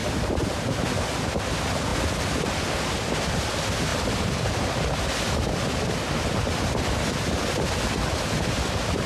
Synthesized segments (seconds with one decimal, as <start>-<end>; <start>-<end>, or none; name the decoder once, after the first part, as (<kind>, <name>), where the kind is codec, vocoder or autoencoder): 0.0-0.8 (vocoder, BigVGAN v2)

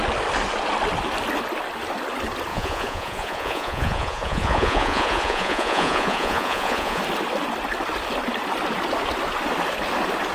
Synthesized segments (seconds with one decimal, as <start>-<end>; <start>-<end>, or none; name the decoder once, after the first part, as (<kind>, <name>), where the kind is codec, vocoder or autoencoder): 2.5-7.0 (vocoder, Vocos)

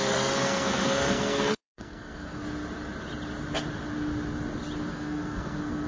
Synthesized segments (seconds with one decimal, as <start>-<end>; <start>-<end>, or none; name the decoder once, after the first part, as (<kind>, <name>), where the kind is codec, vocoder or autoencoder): 0.0-2.4 (codec, SNAC); 4.9-5.9

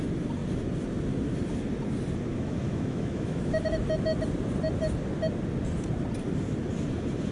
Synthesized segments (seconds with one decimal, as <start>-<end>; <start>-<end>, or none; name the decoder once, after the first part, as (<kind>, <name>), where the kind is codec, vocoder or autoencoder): 2.3-3.5 (autoencoder, DAC-VAE)

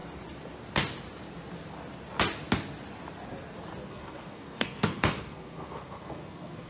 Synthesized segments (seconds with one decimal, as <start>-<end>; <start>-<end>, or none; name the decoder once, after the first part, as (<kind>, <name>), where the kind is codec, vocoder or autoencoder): 3.8-6.7 (codec, SNAC)